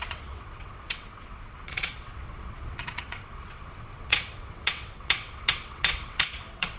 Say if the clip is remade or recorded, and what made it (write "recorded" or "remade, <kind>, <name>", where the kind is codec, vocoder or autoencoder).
remade, vocoder, WaveNeXt